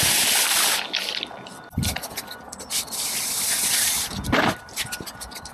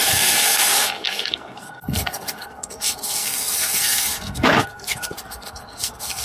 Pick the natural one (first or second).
first